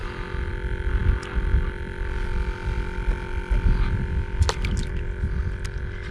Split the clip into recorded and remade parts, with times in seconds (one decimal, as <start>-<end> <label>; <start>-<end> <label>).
0.0-6.1 recorded